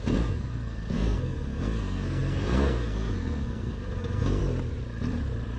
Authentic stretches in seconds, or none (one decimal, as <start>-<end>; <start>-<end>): 4.4-5.6